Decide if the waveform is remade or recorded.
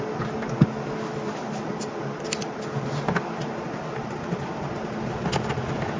recorded